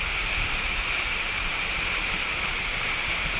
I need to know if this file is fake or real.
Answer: real